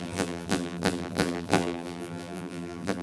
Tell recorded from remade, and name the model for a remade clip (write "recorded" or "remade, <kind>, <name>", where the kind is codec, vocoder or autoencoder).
remade, vocoder, BigVGAN v2